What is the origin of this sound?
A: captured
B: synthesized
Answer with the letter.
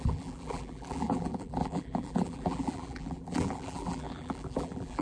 B